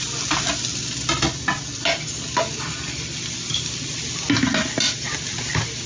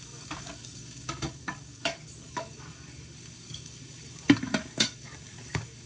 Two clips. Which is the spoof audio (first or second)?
second